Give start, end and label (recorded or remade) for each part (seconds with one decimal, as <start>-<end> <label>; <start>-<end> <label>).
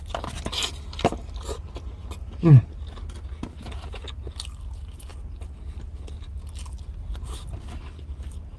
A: 0.0-8.6 recorded